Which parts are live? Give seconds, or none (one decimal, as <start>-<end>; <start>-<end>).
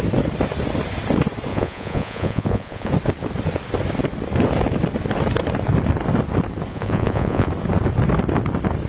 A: 0.0-1.5; 2.9-6.7; 7.5-8.9